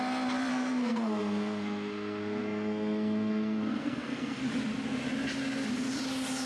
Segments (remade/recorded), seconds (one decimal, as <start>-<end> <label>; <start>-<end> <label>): 0.0-0.5 recorded; 0.5-4.4 remade; 4.4-6.5 recorded